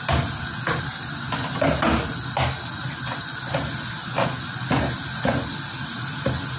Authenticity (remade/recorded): recorded